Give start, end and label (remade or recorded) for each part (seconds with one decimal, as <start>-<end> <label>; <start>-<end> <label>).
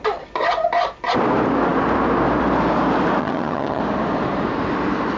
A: 0.0-3.2 recorded; 3.2-3.8 remade; 3.8-5.2 recorded